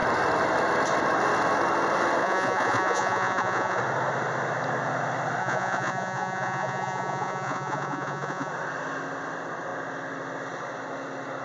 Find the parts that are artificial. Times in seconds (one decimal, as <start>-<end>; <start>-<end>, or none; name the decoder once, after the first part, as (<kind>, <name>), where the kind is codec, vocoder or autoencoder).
2.2-3.8 (vocoder, Vocos); 5.4-8.5